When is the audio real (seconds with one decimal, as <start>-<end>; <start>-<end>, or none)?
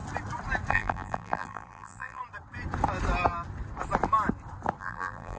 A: 0.0-0.7; 2.2-4.8